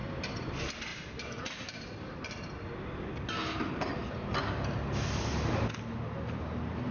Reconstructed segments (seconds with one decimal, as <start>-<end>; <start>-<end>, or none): 0.0-0.5; 0.9-2.2; 3.4-3.9